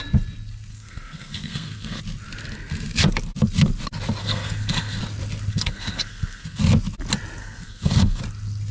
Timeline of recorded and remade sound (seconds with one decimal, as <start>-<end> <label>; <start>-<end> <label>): 0.0-0.7 recorded; 0.7-2.0 remade; 2.0-4.2 recorded; 4.2-5.0 remade; 5.0-5.5 recorded; 5.5-6.6 remade; 6.6-7.4 recorded; 7.4-8.2 remade; 8.2-8.7 recorded